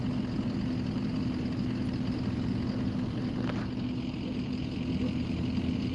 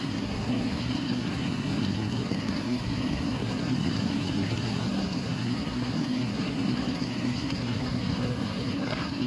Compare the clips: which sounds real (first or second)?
first